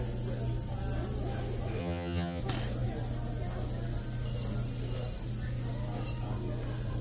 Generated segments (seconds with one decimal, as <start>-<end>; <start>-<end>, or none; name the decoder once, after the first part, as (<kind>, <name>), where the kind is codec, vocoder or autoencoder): 1.8-2.4 (vocoder, HiFi-GAN)